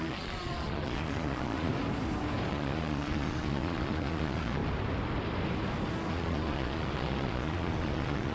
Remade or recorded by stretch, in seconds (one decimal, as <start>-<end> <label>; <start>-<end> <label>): 0.0-1.7 remade; 1.7-2.5 recorded; 2.5-4.6 remade; 4.6-6.1 recorded; 6.1-8.3 remade